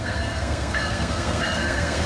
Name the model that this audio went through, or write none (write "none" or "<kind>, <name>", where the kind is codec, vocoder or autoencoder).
codec, SNAC